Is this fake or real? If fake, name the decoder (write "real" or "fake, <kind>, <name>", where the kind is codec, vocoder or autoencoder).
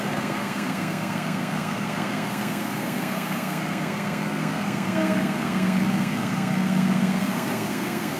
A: fake, codec, SNAC